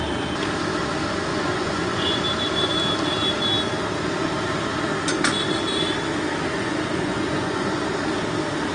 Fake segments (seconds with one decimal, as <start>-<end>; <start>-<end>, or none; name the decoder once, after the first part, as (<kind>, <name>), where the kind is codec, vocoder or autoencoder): 1.3-2.2 (vocoder, Vocos); 6.5-7.8